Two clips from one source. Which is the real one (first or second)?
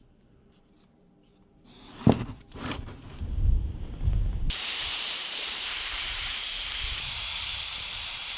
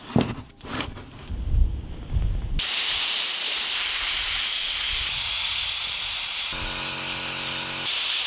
second